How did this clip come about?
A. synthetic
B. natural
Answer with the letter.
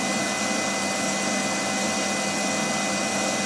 B